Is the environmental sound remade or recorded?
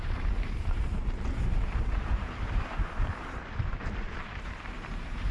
remade